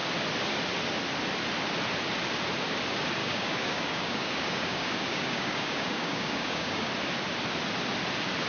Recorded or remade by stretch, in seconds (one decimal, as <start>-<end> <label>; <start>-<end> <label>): 0.0-3.2 recorded; 3.2-6.9 remade; 6.9-8.5 recorded